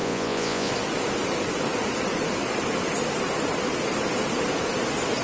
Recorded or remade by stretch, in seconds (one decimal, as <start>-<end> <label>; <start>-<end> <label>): 0.0-0.7 remade; 0.7-5.2 recorded